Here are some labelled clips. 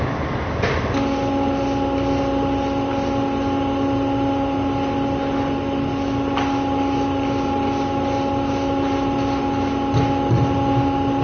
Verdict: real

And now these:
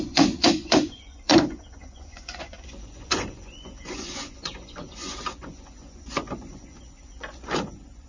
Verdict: fake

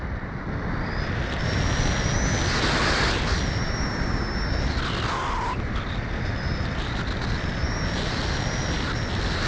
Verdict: real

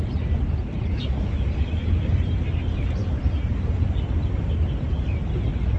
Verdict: real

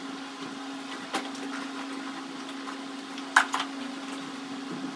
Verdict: real